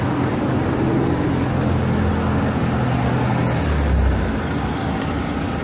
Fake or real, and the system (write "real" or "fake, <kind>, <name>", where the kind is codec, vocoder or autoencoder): real